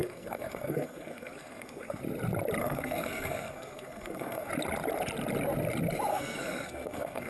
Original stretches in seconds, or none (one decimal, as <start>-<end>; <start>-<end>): 2.0-2.6; 4.5-6.1